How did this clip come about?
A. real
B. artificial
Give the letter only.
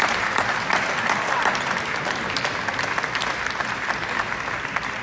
A